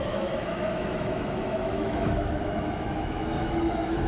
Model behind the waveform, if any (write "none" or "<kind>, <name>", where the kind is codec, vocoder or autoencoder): autoencoder, DAC-VAE